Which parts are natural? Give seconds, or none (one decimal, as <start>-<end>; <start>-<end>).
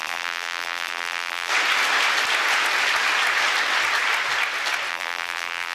1.5-4.9